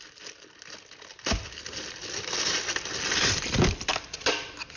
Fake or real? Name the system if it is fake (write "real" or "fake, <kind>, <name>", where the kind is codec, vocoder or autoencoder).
real